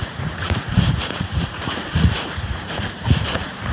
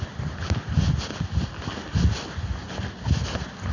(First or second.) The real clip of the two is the second